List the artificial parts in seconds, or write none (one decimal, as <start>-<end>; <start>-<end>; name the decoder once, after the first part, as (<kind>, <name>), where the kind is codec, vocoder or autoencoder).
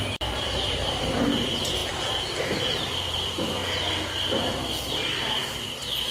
0.0-3.6 (vocoder, BigVGAN v2)